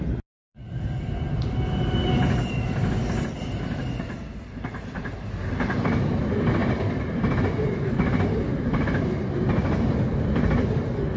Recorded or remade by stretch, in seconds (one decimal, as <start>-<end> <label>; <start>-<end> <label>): 0.0-11.2 recorded